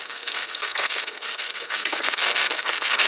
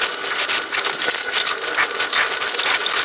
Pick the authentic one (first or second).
second